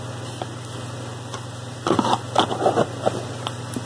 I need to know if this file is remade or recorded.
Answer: recorded